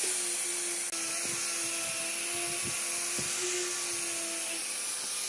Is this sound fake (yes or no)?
no